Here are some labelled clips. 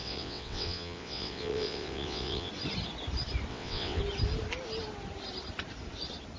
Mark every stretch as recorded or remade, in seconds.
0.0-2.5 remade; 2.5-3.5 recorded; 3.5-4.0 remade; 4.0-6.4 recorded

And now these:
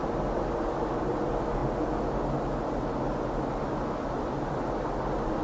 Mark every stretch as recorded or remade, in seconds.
0.0-5.4 recorded

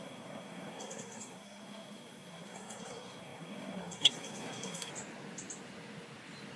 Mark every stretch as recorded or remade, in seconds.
0.0-4.9 remade; 4.9-6.6 recorded

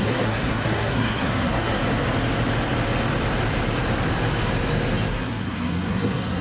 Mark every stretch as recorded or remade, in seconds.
0.0-1.8 remade; 1.8-5.1 recorded; 5.1-6.4 remade

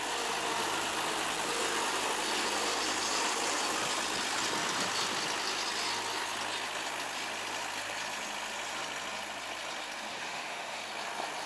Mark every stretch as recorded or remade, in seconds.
0.0-10.1 recorded; 10.1-10.8 remade; 10.8-11.5 recorded

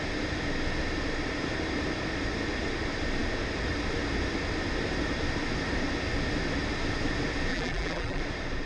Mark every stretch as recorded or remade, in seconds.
0.0-7.5 recorded; 7.5-8.2 remade; 8.2-8.7 recorded